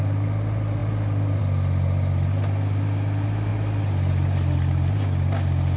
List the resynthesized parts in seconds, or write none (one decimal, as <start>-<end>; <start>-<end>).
none